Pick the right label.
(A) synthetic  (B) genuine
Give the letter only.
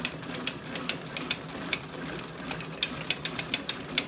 A